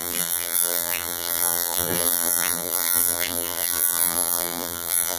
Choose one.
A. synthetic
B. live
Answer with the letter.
A